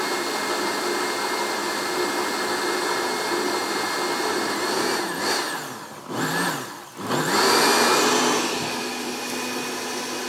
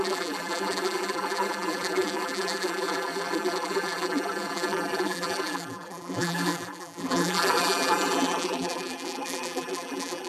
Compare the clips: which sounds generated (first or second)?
second